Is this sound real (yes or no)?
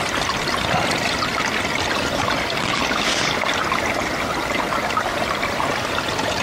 yes